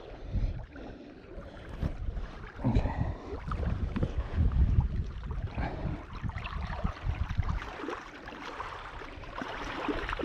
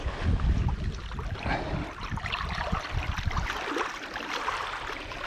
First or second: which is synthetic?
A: first